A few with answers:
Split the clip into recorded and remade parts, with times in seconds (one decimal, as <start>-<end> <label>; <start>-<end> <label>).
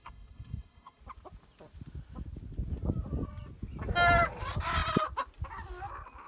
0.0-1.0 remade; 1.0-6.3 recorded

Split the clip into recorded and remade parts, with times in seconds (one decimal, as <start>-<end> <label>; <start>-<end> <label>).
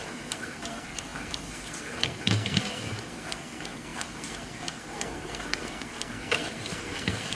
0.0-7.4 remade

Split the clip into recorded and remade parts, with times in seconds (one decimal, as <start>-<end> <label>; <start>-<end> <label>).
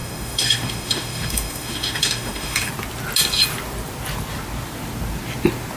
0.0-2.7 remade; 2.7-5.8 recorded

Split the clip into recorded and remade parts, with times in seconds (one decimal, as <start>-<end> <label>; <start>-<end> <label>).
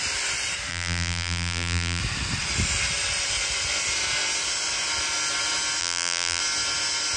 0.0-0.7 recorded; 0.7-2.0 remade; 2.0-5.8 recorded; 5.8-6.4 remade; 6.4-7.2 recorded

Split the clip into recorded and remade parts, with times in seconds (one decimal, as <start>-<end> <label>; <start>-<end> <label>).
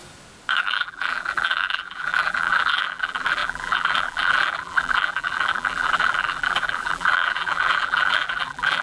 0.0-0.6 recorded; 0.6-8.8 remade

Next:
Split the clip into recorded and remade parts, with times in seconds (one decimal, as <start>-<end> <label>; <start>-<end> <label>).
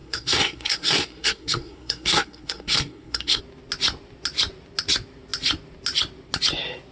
0.0-3.4 remade; 3.4-6.9 recorded